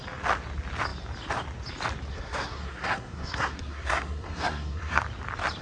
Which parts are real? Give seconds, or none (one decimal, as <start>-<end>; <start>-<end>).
0.0-2.1; 5.0-5.6

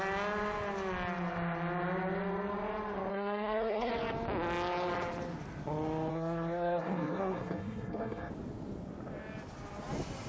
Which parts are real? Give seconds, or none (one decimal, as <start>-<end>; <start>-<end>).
0.0-3.1; 3.9-6.1; 8.3-10.3

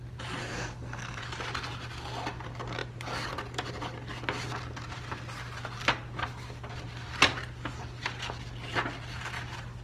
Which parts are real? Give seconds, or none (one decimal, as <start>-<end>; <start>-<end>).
0.0-0.4; 1.2-9.8

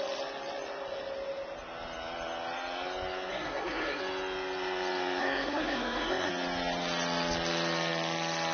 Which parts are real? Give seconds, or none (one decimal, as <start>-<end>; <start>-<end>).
0.0-3.3; 4.0-5.2; 6.3-8.5

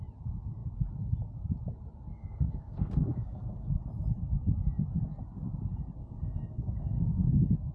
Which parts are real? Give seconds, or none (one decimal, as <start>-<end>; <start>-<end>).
0.0-2.1; 3.7-6.0; 7.3-7.7

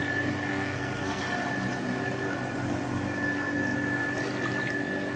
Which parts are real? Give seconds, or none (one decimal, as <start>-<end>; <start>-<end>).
0.0-0.5; 1.2-5.2

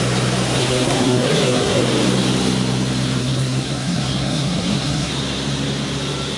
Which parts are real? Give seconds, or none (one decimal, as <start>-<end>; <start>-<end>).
0.0-0.6; 1.8-3.2; 5.1-6.4

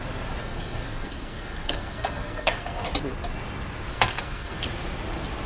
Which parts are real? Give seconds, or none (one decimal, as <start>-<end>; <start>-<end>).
0.0-0.4; 2.8-3.9; 4.6-5.5